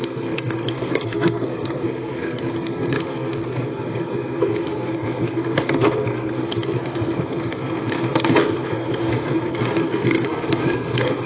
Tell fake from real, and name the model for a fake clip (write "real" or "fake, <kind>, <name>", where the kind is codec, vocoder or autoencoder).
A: fake, codec, SNAC